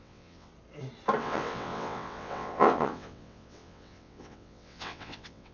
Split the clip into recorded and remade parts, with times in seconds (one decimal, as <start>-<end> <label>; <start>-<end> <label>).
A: 0.0-0.5 remade; 0.5-1.2 recorded; 1.2-5.5 remade